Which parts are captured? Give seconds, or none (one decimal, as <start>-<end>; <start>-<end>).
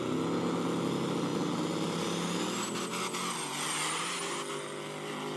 0.0-5.4